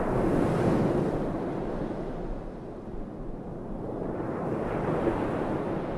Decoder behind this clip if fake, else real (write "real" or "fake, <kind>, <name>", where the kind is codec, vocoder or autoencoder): real